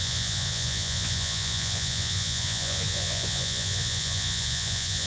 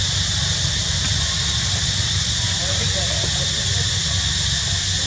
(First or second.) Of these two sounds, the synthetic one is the first